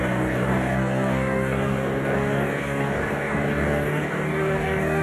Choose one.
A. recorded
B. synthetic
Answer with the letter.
B